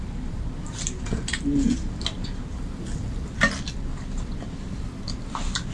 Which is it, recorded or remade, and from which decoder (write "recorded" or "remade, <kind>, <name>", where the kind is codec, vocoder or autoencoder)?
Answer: recorded